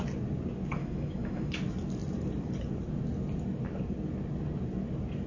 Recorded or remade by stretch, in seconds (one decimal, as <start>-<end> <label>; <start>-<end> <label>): 0.0-0.8 recorded; 0.8-1.5 remade; 1.5-5.3 recorded